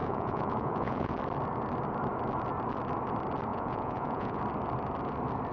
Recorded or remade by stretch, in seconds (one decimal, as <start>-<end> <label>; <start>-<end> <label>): 0.0-1.1 remade; 1.1-3.5 recorded; 3.5-4.4 remade; 4.4-5.5 recorded